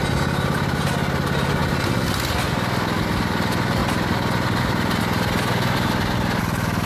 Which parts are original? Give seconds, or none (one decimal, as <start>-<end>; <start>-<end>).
0.0-6.9